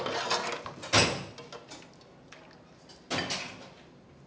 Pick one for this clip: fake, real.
real